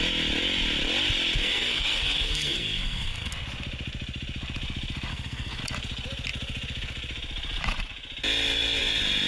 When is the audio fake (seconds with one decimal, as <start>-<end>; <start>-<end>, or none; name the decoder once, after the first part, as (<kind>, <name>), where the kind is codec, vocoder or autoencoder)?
1.4-3.3 (codec, SNAC); 5.1-5.6